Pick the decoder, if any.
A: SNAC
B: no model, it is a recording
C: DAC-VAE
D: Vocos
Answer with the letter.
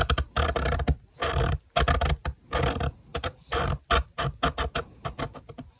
B